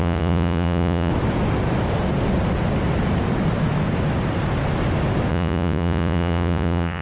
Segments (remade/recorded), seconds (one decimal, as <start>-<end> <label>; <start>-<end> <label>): 0.0-1.1 remade; 1.1-5.3 recorded; 5.3-7.0 remade